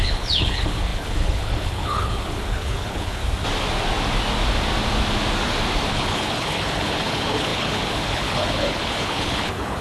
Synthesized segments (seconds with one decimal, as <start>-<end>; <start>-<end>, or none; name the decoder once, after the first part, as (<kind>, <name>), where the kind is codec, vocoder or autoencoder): 0.0-3.2 (codec, HILCodec); 5.9-9.8